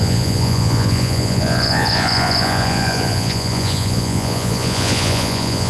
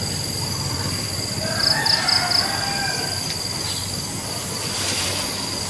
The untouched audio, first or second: second